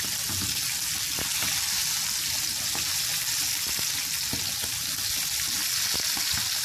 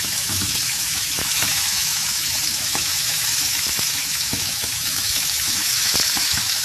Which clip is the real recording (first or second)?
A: first